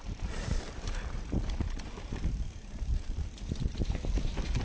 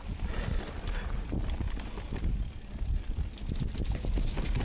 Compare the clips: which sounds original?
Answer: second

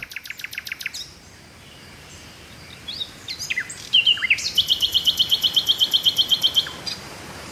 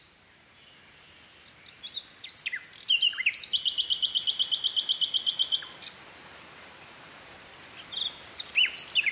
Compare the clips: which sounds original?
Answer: second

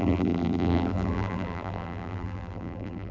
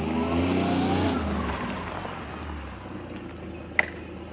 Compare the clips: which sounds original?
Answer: second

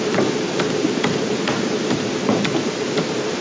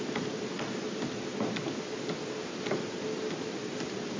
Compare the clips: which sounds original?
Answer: second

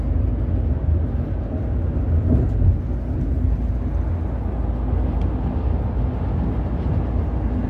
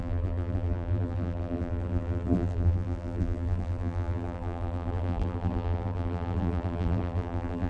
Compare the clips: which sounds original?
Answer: first